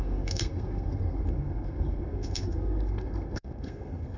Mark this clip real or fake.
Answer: fake